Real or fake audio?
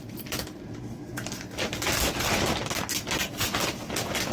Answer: real